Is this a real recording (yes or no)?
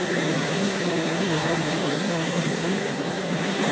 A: no